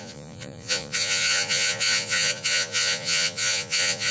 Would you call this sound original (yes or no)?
no